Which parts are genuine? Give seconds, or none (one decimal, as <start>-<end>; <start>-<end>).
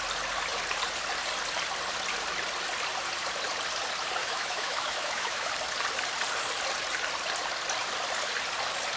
0.0-4.2; 5.5-9.0